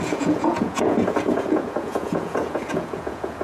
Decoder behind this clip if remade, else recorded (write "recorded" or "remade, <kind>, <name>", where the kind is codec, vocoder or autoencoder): remade, vocoder, Vocos